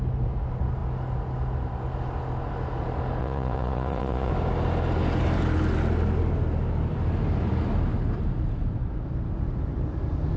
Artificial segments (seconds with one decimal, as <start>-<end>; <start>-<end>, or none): 3.2-4.3